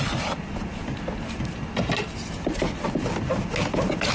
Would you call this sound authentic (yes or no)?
yes